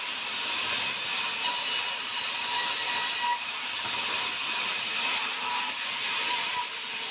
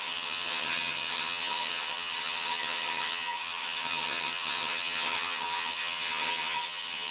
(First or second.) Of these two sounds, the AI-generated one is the second